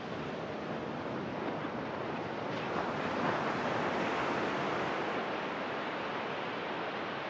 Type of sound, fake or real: real